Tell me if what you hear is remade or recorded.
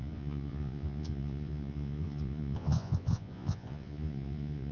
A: remade